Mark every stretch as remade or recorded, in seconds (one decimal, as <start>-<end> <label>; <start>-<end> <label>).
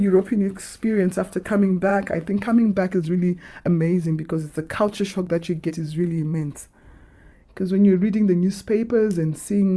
0.0-7.4 remade; 7.4-9.8 recorded